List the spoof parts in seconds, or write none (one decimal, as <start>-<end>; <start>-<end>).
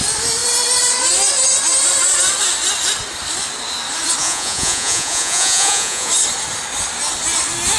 4.2-6.1